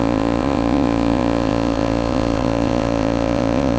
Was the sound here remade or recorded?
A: remade